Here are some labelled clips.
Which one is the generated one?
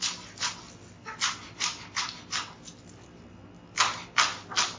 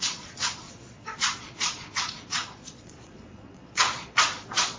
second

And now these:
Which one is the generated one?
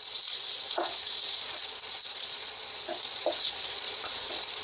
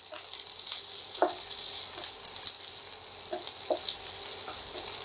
first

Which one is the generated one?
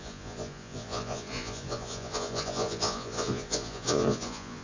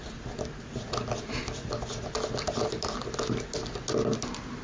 first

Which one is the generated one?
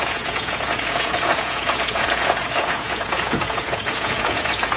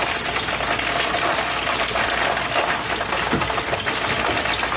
first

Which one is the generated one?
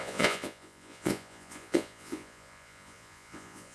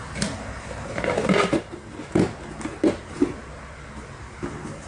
first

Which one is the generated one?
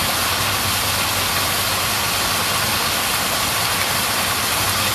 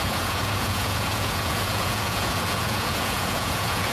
second